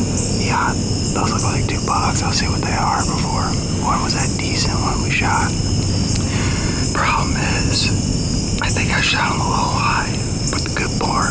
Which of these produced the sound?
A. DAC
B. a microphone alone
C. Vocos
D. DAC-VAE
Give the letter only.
B